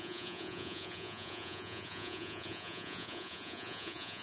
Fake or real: fake